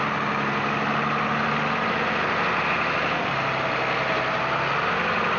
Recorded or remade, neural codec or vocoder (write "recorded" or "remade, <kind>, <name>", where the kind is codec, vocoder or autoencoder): recorded